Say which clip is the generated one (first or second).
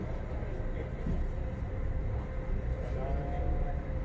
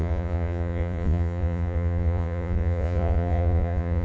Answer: second